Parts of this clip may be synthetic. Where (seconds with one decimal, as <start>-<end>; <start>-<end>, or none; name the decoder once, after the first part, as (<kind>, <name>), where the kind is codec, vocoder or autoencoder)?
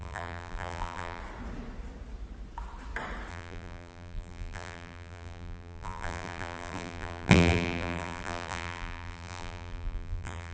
0.0-1.2 (vocoder, BigVGAN v2); 3.3-10.5